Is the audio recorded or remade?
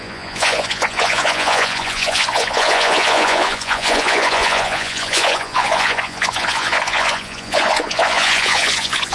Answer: remade